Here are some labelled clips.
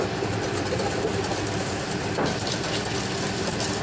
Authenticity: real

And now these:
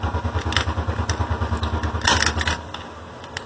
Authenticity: real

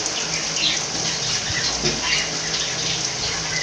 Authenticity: real